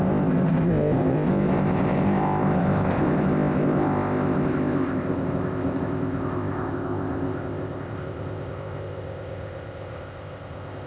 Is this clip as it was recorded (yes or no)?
no